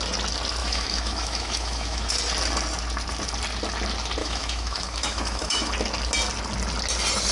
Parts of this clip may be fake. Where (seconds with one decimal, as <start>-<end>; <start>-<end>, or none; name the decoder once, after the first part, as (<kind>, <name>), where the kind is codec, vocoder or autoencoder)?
0.6-2.1 (autoencoder, DAC-VAE); 4.2-5.7